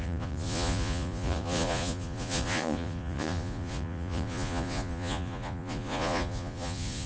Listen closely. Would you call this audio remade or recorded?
remade